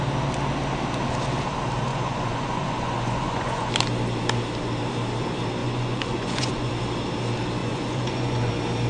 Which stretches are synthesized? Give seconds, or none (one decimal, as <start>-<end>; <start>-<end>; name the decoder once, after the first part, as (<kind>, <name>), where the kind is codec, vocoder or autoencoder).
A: 1.9-3.7 (vocoder, Vocos); 5.6-6.7; 7.6-8.5